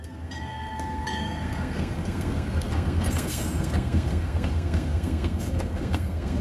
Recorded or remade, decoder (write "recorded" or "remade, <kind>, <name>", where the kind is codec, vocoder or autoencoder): remade, codec, SNAC